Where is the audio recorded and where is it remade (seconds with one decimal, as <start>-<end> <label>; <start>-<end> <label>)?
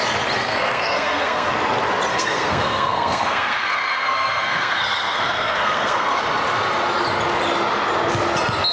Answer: 0.0-0.4 recorded; 0.4-1.5 remade; 1.5-2.1 recorded; 2.1-6.2 remade; 6.2-8.7 recorded